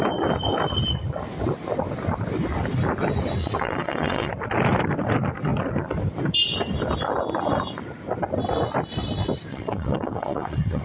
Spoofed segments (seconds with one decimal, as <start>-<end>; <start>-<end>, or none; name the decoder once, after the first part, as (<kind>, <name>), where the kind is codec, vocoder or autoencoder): 3.4-4.3 (vocoder, WaveNeXt); 9.5-10.8